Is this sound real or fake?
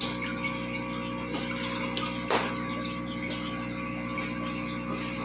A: real